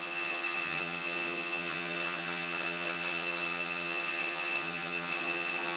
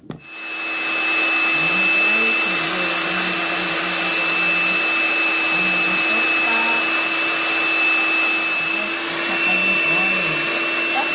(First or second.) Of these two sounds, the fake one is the first